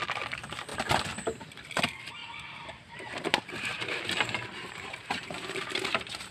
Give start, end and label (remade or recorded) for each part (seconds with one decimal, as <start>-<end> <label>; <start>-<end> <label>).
0.0-2.2 recorded; 2.2-6.3 remade